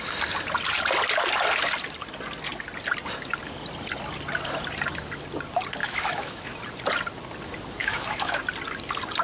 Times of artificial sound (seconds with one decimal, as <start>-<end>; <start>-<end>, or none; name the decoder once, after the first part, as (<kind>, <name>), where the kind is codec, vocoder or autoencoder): 5.8-6.6 (autoencoder, DAC-VAE); 7.8-8.4